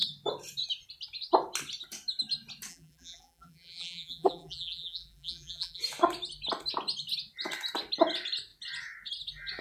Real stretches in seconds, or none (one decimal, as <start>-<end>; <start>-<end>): 0.0-2.7; 5.8-9.6